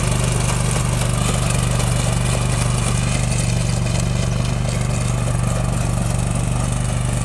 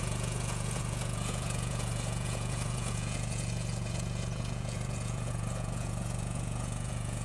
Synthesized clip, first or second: second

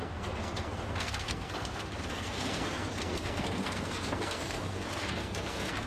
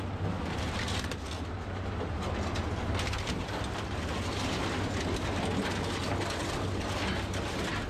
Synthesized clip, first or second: first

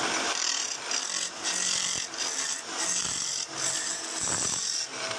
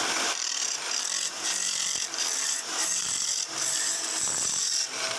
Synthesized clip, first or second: second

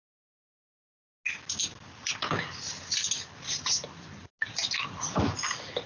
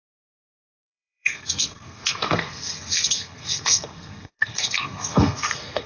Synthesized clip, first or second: second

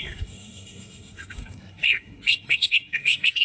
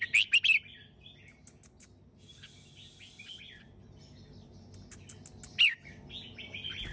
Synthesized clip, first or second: first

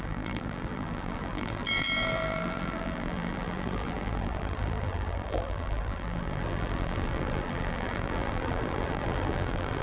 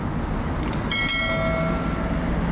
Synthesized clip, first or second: first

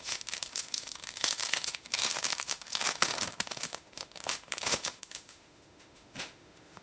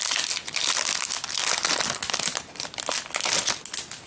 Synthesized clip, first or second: first